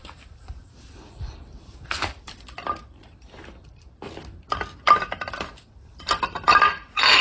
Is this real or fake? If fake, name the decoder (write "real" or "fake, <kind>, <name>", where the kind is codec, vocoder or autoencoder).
fake, vocoder, BigVGAN v2